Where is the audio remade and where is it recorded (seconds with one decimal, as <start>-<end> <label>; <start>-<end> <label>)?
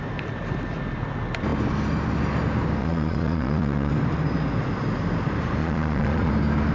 0.0-2.8 recorded; 2.8-3.9 remade; 3.9-5.6 recorded; 5.6-6.3 remade; 6.3-6.7 recorded